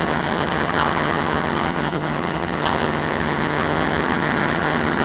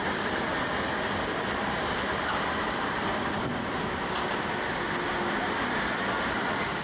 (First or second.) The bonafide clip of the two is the second